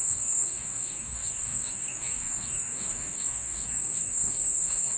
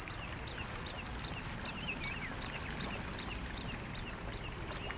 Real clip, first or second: second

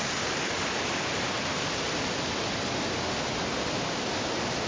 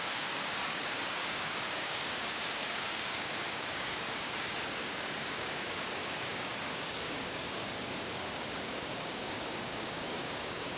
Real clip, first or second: first